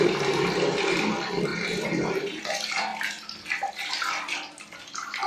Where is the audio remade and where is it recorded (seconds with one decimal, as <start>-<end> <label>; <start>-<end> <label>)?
0.0-1.5 recorded; 1.5-2.4 remade; 2.4-5.3 recorded